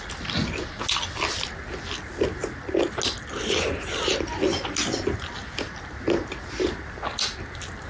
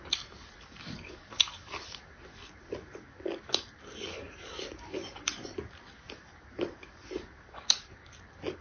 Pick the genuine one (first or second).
first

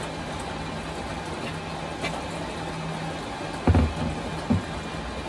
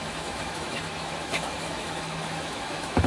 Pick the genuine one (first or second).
first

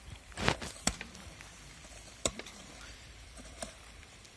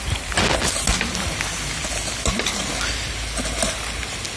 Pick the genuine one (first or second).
second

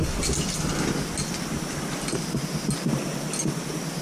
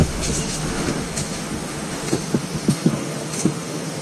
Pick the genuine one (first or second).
first